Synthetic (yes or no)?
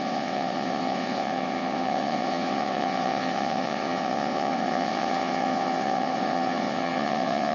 yes